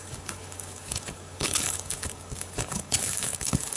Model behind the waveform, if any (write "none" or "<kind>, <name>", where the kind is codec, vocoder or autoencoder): codec, DAC